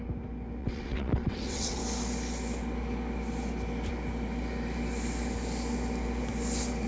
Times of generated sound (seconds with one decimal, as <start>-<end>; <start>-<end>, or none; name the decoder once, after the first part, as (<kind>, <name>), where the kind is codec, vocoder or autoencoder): 0.6-1.8 (vocoder, WaveNeXt)